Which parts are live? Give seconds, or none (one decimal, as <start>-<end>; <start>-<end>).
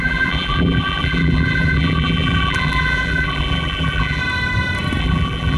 4.2-5.0